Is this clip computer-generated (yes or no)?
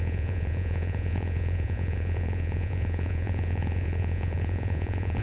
yes